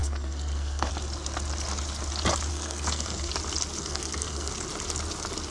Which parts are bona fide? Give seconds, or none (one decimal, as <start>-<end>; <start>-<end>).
0.9-2.5; 3.3-3.8; 4.5-5.5